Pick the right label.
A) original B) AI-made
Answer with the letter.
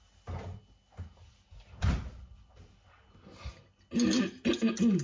A